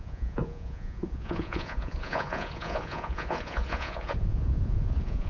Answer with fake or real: fake